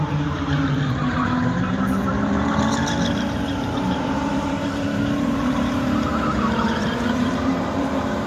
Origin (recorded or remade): remade